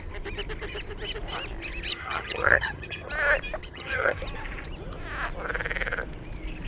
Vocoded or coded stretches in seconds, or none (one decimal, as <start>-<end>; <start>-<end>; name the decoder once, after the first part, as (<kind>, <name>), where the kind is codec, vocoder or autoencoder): 1.9-3.1 (vocoder, HiFi-GAN); 3.6-4.2